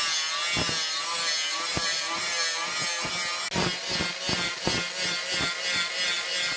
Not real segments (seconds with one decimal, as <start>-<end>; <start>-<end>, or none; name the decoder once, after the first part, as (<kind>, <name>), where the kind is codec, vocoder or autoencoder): 1.5-2.3 (vocoder, BigVGAN v2)